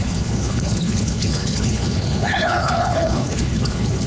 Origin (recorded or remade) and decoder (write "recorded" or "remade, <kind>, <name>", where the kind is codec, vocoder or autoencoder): remade, codec, HILCodec